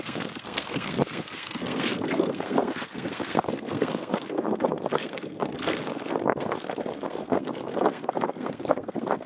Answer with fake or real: fake